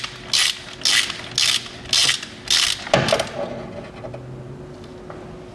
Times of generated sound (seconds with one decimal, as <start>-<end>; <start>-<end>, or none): none